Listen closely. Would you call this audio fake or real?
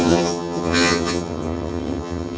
fake